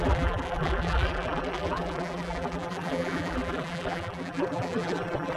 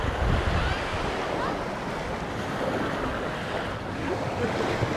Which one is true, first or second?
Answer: second